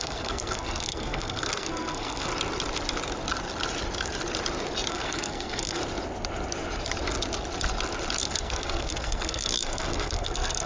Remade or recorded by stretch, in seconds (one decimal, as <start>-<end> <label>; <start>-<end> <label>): 0.0-2.3 remade; 2.3-4.9 recorded; 4.9-5.8 remade; 5.8-8.2 recorded; 8.2-10.7 remade